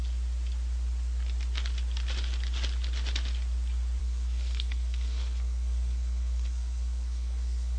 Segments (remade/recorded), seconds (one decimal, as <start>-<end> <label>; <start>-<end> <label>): 0.0-4.0 recorded; 4.0-7.8 remade